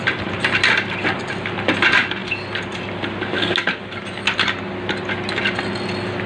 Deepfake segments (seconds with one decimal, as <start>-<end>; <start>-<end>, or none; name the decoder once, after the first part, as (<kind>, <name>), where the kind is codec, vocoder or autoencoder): none